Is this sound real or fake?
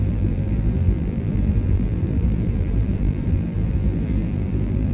fake